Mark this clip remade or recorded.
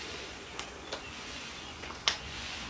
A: remade